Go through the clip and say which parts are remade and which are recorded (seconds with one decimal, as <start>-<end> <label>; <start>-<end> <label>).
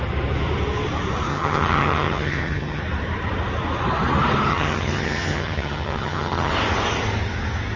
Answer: 0.0-1.3 recorded; 1.3-2.8 remade; 2.8-4.5 recorded; 4.5-6.5 remade; 6.5-7.8 recorded